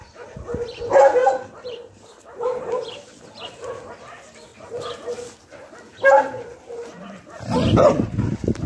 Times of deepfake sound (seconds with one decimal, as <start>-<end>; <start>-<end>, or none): 1.2-2.4

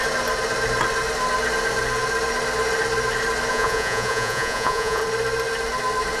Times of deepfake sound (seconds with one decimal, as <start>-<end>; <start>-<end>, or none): 3.5-5.0

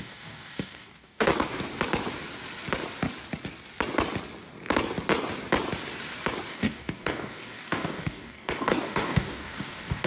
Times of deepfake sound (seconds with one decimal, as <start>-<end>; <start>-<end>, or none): 0.0-1.3; 6.5-10.1

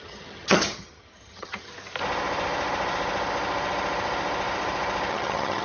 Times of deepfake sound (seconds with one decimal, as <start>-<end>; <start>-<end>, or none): 0.0-1.7; 5.1-5.6

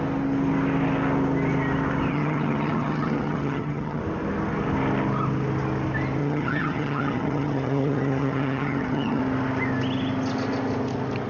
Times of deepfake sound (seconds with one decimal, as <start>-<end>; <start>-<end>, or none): 2.1-4.0; 6.2-9.2

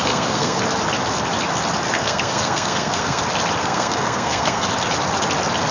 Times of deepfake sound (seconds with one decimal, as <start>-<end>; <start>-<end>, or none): 0.0-0.6; 2.0-3.2; 3.6-4.7

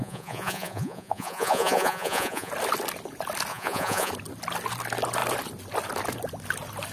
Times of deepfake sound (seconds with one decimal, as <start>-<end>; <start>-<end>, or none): 0.0-2.5; 3.5-4.1

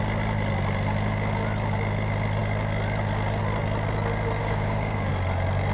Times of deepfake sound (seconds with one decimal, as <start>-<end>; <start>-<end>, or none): 4.4-5.1